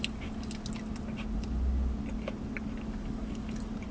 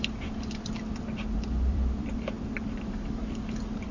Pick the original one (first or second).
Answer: first